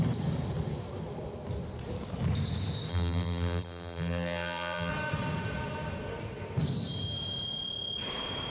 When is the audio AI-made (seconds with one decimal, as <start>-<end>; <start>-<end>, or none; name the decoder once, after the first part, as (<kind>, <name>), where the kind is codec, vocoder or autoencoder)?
2.9-4.9 (vocoder, BigVGAN v2)